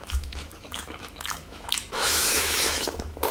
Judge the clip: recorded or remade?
remade